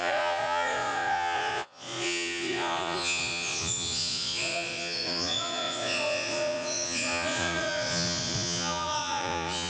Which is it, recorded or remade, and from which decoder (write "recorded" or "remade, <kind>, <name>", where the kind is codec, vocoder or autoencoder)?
remade, vocoder, Vocos